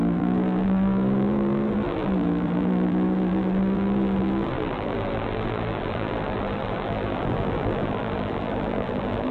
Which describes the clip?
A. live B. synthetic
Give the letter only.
B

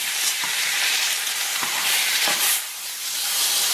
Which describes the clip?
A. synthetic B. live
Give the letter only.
A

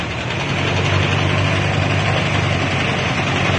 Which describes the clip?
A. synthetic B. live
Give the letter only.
B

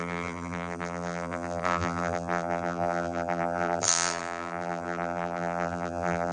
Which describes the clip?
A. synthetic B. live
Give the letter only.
A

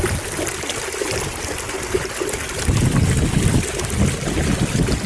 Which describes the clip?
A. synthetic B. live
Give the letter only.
B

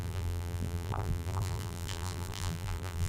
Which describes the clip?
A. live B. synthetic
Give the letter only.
B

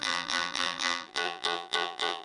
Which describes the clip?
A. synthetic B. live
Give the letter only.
A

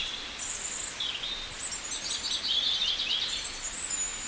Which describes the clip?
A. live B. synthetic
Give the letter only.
A